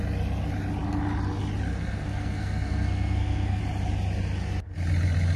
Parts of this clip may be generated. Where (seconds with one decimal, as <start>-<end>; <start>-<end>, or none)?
1.7-3.6